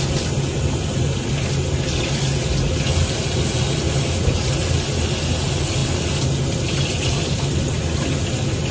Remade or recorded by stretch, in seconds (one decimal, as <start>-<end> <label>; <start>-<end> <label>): 0.0-8.7 recorded